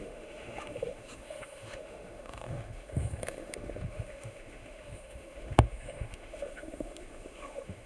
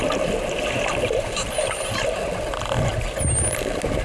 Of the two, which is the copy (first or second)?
first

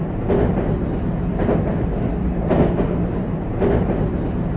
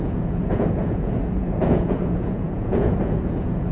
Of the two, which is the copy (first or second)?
second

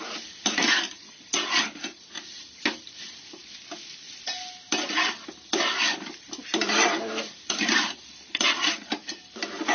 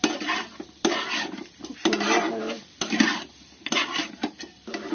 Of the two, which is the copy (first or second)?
first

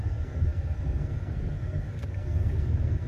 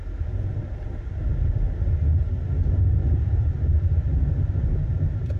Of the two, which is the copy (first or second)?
first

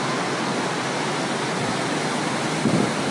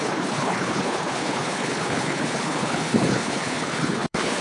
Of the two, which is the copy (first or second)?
second